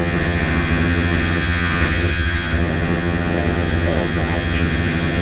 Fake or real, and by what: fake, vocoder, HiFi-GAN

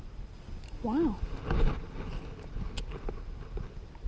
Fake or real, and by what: real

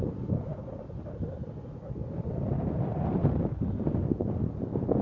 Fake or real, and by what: real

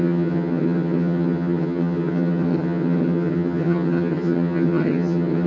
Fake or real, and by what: fake, vocoder, HiFi-GAN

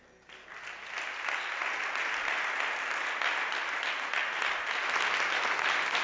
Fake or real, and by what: real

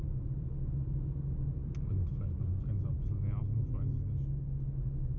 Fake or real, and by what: real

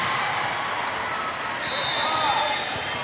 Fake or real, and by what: real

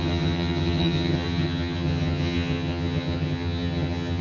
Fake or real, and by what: fake, vocoder, HiFi-GAN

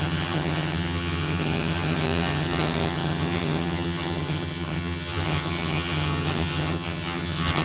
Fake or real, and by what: fake, vocoder, HiFi-GAN